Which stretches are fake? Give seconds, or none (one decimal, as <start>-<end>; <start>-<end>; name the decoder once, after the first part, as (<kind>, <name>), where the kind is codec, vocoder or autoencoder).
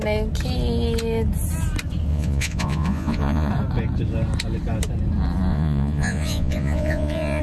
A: 2.1-3.5 (vocoder, Vocos); 5.5-7.4